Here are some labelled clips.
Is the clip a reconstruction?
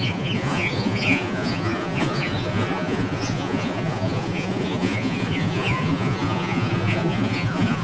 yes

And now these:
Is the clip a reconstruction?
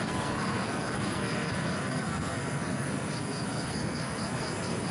yes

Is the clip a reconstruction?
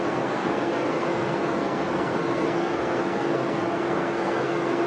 yes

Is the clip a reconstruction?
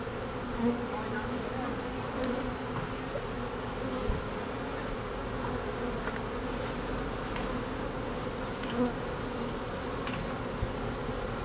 no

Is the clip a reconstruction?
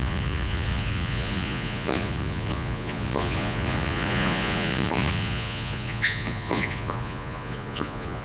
yes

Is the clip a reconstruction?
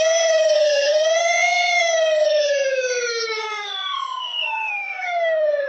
yes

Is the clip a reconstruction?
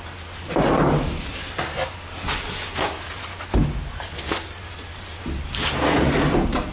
no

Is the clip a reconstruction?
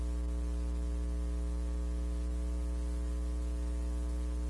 no